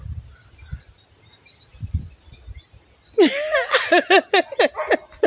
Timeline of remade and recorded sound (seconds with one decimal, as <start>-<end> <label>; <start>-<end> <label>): 0.0-5.3 recorded